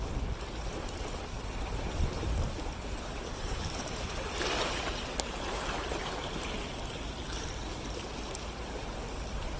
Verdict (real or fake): real